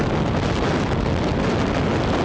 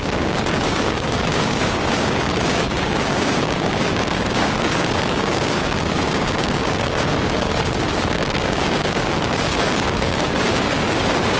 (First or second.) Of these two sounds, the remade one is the second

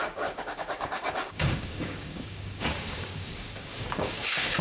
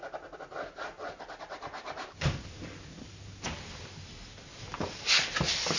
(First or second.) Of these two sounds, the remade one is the first